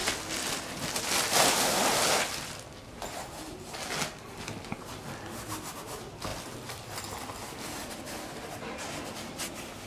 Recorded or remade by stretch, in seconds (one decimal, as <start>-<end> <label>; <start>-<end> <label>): 0.0-9.9 recorded